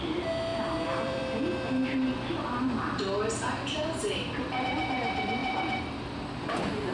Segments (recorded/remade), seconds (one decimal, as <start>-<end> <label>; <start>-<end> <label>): 0.0-0.5 recorded; 0.5-1.2 remade; 1.2-5.4 recorded; 5.4-6.9 remade